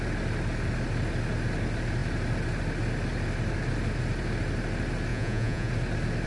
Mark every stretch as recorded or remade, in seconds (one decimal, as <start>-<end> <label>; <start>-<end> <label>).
0.0-5.1 recorded; 5.1-5.7 remade; 5.7-6.3 recorded